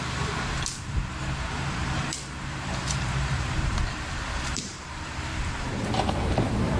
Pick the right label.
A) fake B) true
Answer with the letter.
A